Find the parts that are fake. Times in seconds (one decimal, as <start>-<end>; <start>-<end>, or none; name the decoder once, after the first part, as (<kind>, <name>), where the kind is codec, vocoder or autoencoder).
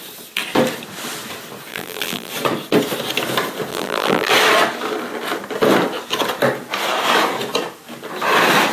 1.7-2.3 (vocoder, BigVGAN v2); 3.7-4.3